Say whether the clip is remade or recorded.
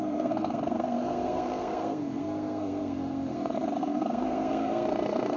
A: remade